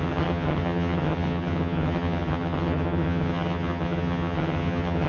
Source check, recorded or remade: remade